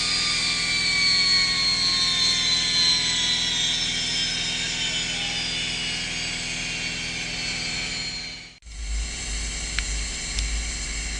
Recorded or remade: recorded